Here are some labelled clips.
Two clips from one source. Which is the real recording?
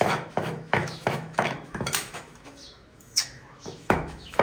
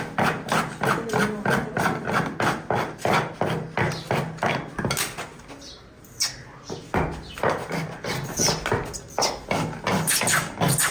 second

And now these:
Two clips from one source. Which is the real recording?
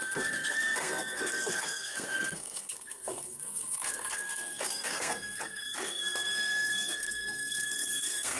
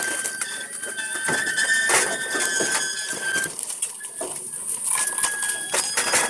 second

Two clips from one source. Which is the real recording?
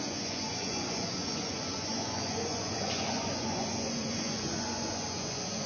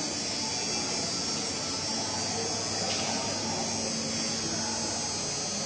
second